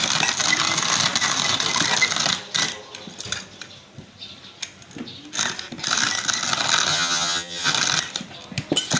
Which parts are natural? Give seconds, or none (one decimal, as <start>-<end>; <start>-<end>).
0.0-6.9; 7.7-9.0

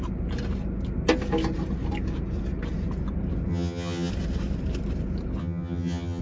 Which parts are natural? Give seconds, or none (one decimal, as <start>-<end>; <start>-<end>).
0.0-3.5; 4.1-5.4

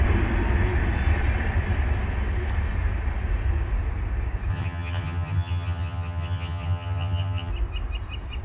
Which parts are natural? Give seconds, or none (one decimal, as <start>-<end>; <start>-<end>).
0.0-4.5; 7.5-8.4

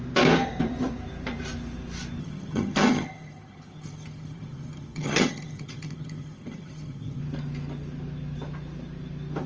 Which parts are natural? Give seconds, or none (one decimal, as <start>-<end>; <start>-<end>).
0.0-2.2; 7.2-9.5

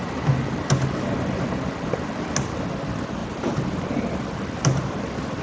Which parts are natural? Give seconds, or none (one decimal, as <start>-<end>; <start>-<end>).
0.0-5.4

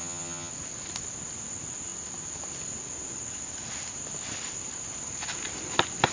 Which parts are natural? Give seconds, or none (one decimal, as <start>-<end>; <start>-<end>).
0.5-6.1

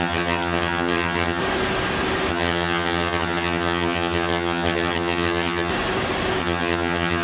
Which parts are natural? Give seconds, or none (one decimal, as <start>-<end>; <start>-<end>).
1.4-2.3; 5.7-6.4